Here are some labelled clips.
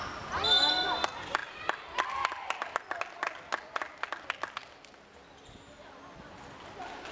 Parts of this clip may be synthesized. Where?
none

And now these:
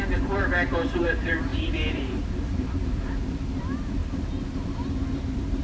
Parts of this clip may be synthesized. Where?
0.0-4.0 (vocoder, BigVGAN v2)

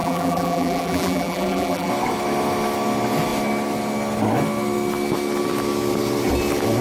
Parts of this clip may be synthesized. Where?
0.0-1.9 (vocoder, BigVGAN v2)